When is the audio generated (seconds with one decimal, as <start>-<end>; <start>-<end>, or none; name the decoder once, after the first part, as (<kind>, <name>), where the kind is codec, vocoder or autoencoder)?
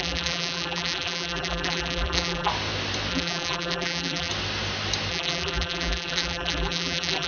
0.0-2.5 (vocoder, BigVGAN v2); 3.1-4.3; 5.1-7.3